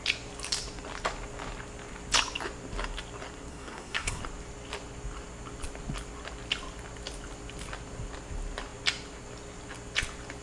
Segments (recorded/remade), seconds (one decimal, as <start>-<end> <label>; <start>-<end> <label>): 0.0-3.5 recorded; 3.5-4.2 remade; 4.2-10.4 recorded